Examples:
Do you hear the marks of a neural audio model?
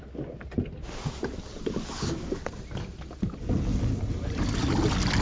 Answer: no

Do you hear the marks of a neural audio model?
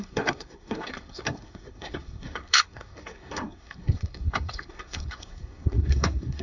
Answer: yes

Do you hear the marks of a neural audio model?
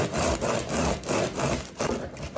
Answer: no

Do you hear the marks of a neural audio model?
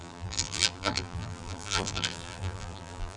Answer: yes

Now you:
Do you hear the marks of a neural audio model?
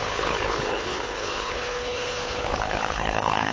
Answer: yes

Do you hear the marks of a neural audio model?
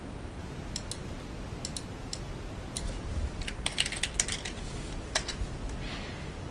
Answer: no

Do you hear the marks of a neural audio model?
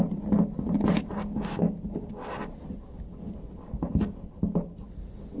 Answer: no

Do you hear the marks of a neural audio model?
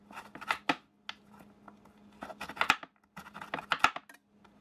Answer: no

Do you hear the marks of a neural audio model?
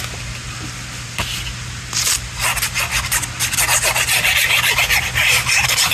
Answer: no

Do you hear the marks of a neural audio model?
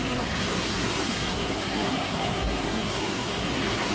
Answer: yes